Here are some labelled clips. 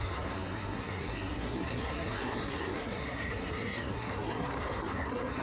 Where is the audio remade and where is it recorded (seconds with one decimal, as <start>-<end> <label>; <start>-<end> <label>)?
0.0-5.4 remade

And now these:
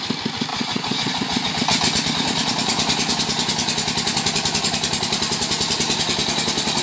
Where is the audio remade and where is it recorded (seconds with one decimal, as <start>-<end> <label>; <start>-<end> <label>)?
0.0-0.5 recorded; 0.5-1.5 remade; 1.5-6.8 recorded

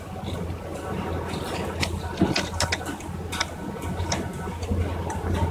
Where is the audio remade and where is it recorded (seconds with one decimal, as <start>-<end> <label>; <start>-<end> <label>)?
0.0-5.5 recorded